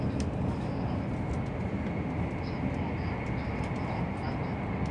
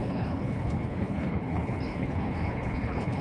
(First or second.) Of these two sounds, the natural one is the first